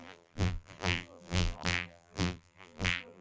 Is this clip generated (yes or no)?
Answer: yes